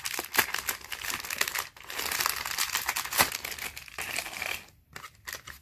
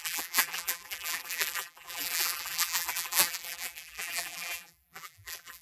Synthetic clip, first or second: second